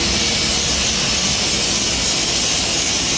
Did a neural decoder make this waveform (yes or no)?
no